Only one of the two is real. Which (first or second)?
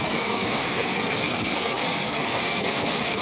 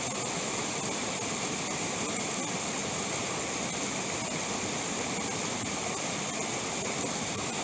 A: second